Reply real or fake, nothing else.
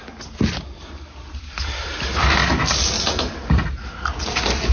real